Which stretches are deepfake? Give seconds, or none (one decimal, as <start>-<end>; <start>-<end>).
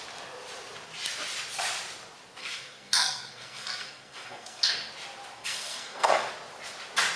2.4-4.9; 5.4-6.3